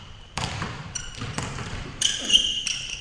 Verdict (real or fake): fake